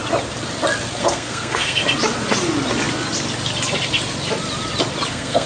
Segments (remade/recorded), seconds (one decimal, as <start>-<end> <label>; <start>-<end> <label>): 0.0-1.0 recorded; 1.0-1.8 remade; 1.8-5.1 recorded; 5.1-5.5 remade